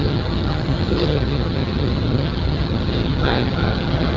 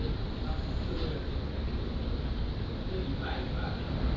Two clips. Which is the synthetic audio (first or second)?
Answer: first